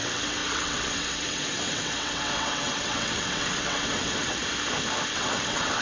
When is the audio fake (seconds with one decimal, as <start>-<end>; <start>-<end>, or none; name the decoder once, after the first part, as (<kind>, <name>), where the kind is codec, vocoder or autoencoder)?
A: 0.0-4.4 (vocoder, WaveNeXt); 5.1-5.8